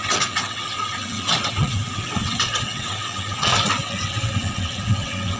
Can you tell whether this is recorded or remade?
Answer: remade